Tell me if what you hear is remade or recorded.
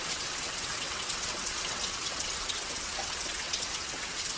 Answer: remade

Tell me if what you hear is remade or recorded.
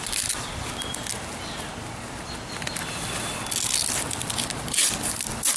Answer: recorded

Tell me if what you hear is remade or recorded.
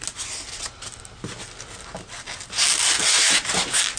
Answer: recorded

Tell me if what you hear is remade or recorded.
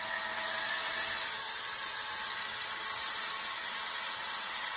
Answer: remade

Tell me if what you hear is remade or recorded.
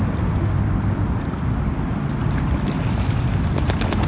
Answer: recorded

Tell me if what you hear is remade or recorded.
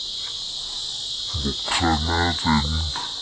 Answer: recorded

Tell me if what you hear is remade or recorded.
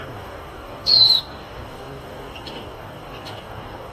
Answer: remade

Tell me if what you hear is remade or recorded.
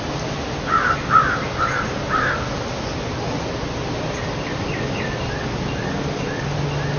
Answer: recorded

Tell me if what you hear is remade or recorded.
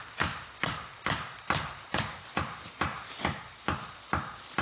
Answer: recorded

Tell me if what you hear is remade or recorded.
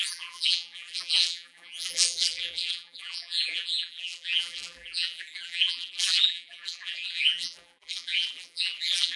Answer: remade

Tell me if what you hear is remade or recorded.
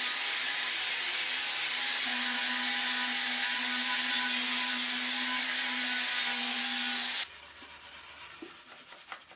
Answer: recorded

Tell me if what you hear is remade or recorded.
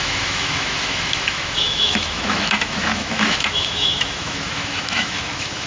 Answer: remade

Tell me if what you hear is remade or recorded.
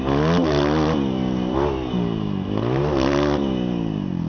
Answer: recorded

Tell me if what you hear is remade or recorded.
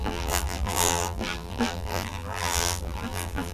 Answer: remade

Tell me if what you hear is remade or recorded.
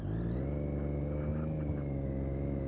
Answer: recorded